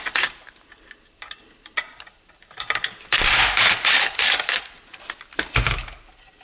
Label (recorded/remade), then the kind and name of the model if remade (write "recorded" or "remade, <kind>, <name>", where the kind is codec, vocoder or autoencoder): recorded